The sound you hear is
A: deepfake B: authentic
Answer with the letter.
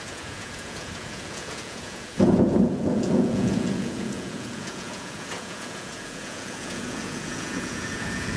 A